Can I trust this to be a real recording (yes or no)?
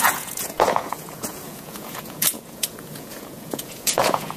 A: no